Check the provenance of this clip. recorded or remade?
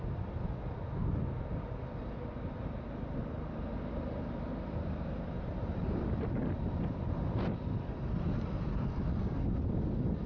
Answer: recorded